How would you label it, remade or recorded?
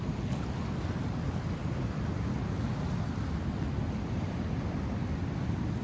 recorded